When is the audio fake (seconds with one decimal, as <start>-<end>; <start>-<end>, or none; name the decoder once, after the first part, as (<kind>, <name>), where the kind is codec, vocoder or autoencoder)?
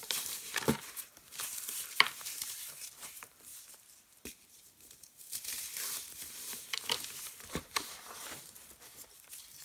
0.0-9.6 (vocoder, BigVGAN v2)